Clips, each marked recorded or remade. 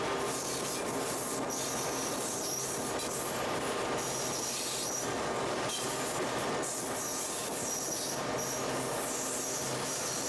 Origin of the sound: recorded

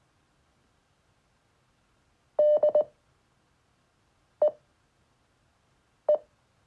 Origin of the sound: recorded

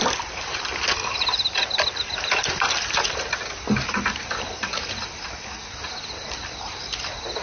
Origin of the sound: recorded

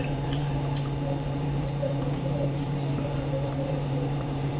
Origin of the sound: remade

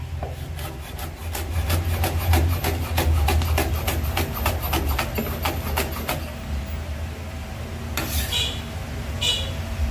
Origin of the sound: recorded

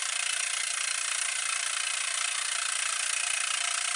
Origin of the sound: remade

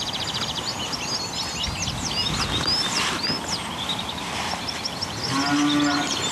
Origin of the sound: recorded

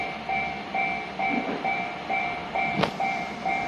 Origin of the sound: remade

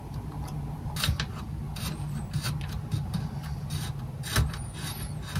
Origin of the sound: recorded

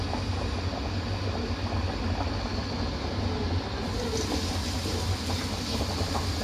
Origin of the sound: recorded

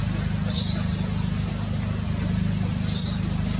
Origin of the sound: recorded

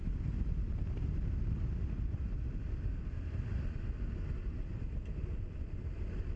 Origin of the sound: recorded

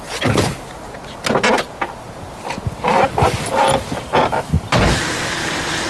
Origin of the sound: recorded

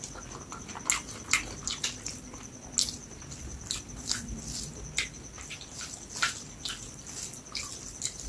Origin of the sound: recorded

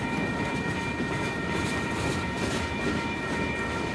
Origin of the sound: remade